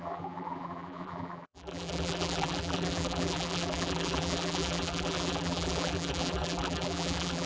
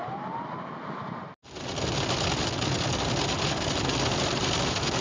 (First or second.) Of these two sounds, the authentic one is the second